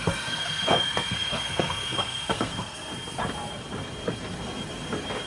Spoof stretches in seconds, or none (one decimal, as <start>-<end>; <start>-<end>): 0.0-2.9